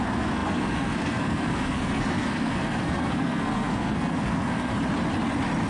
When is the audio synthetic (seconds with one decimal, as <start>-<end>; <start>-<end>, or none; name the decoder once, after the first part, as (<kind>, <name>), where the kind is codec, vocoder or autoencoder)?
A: 0.0-4.7 (codec, SNAC)